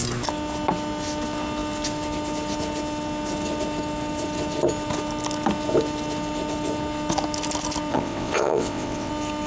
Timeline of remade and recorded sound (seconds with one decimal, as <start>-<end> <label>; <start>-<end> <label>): 0.0-7.9 recorded; 7.9-9.1 remade; 9.1-9.5 recorded